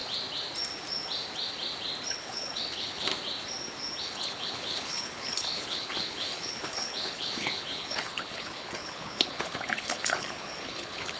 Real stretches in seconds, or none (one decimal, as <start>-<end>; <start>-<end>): 0.0-2.1; 3.1-4.0